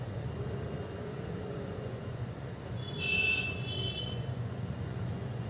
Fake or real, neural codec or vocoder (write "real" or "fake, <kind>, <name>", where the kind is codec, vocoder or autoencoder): fake, vocoder, Vocos